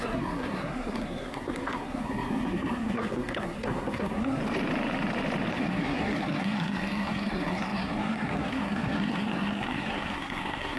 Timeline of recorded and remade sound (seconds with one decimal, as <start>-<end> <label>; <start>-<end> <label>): 0.0-4.4 remade; 4.4-5.5 recorded; 5.5-10.8 remade